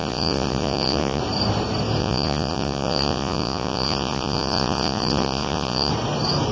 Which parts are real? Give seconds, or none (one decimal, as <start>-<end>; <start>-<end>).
1.2-2.0; 5.9-6.5